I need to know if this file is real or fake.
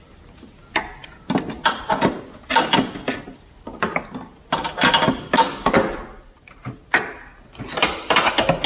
real